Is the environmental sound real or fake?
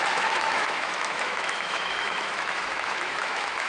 fake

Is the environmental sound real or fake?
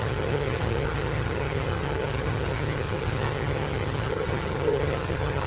fake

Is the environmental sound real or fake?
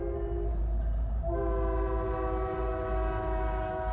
real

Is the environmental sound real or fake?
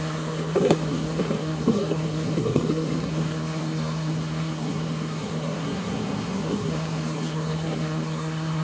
fake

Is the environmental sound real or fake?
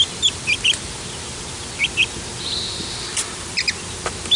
real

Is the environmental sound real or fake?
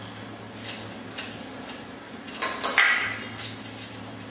real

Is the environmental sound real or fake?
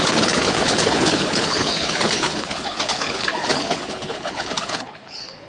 fake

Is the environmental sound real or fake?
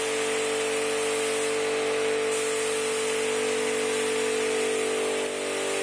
real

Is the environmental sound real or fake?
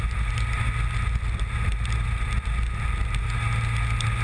real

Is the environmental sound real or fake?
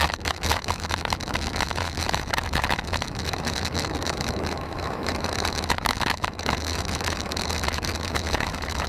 fake